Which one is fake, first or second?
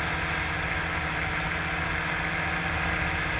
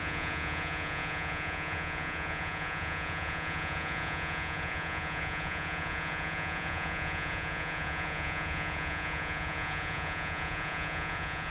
second